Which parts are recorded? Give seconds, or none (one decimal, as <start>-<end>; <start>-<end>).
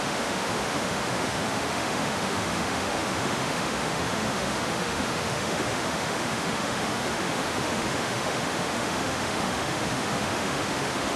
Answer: none